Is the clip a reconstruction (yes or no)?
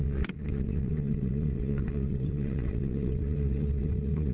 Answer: yes